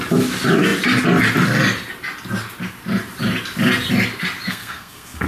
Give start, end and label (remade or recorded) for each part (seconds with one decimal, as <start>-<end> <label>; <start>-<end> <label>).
0.0-4.5 recorded; 4.5-5.3 remade

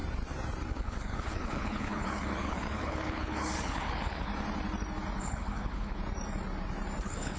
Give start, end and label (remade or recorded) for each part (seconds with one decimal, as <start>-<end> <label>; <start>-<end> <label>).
0.0-0.7 recorded; 0.7-4.3 remade; 4.3-5.2 recorded; 5.2-6.0 remade; 6.0-7.0 recorded; 7.0-7.4 remade

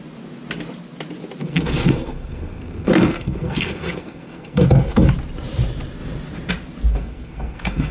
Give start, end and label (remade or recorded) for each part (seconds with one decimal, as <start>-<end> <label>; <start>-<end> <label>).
0.0-1.4 recorded; 1.4-5.1 remade; 5.1-6.9 recorded; 6.9-7.9 remade

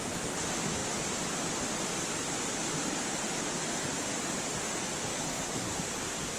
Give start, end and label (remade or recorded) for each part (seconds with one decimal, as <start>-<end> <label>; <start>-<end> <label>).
0.0-5.1 recorded; 5.1-5.7 remade; 5.7-6.4 recorded

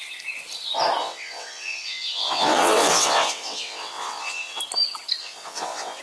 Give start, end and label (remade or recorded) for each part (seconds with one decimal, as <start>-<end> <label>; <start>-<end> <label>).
0.0-1.0 recorded; 1.0-4.6 remade; 4.6-5.2 recorded; 5.2-6.0 remade

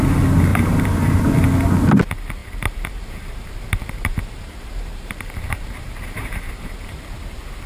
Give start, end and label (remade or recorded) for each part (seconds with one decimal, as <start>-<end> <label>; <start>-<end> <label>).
0.0-0.5 recorded; 0.5-1.2 remade; 1.2-2.4 recorded; 2.4-7.0 remade; 7.0-7.7 recorded